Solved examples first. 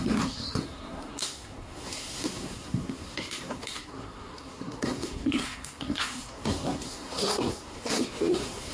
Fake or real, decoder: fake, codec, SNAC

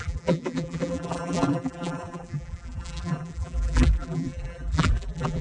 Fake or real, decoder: fake, vocoder, BigVGAN v2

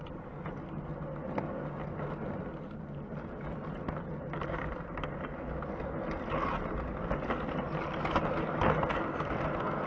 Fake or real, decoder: real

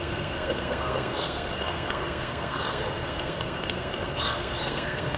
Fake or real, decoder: fake, codec, SNAC